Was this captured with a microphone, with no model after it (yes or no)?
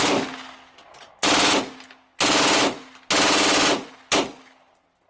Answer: yes